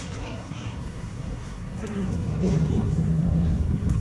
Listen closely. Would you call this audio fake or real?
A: fake